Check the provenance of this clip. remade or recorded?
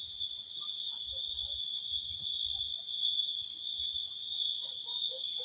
recorded